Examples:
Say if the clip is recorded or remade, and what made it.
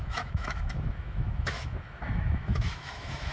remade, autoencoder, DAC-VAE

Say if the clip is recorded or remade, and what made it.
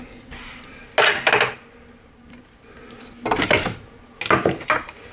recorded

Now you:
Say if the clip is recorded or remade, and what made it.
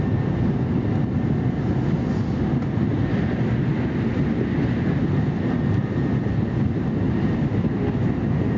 recorded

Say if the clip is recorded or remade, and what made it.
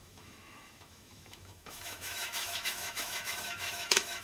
remade, autoencoder, DAC-VAE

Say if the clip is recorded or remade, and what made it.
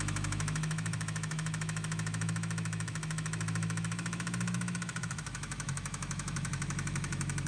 remade, autoencoder, DAC-VAE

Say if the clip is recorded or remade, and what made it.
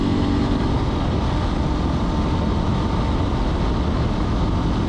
recorded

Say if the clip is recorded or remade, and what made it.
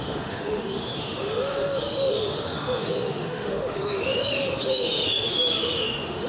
remade, autoencoder, DAC-VAE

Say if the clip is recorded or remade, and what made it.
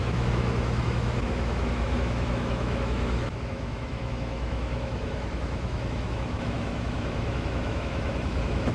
remade, autoencoder, DAC-VAE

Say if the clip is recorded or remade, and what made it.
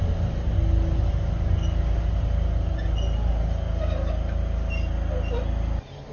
recorded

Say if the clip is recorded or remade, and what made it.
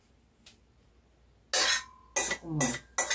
recorded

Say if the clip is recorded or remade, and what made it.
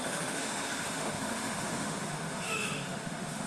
remade, autoencoder, DAC-VAE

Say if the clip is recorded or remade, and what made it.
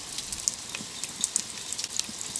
recorded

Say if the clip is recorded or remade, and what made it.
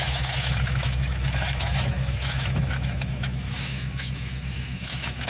remade, autoencoder, DAC-VAE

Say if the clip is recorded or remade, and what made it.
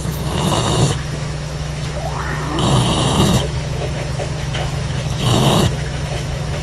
remade, autoencoder, DAC-VAE